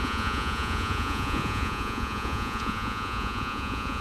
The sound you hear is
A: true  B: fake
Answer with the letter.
B